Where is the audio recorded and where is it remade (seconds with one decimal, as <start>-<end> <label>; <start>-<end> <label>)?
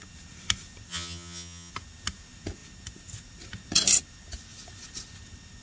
0.0-0.9 recorded; 0.9-1.7 remade; 1.7-5.6 recorded